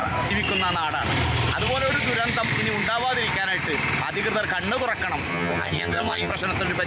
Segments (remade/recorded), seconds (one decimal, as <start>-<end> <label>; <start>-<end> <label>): 0.0-5.3 recorded; 5.3-6.3 remade; 6.3-6.9 recorded